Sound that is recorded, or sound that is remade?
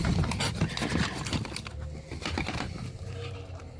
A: recorded